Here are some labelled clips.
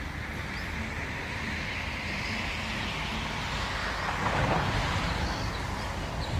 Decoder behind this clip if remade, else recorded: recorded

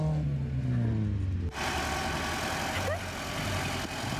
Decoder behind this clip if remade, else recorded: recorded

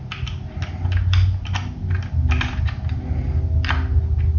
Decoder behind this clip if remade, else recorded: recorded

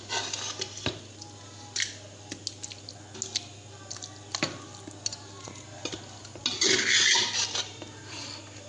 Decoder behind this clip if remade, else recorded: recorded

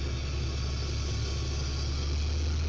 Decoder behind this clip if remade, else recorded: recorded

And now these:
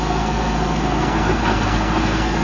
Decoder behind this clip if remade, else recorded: remade, codec, SNAC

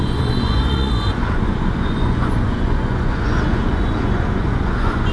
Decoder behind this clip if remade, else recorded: remade, vocoder, Vocos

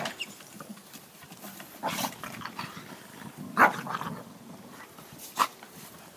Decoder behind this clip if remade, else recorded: recorded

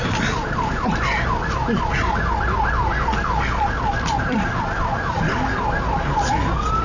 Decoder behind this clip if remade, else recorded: recorded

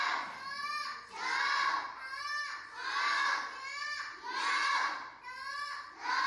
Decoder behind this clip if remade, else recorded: recorded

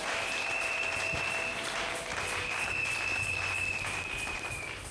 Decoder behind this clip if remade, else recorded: recorded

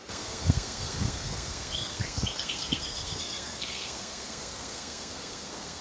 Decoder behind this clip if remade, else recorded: remade, codec, SNAC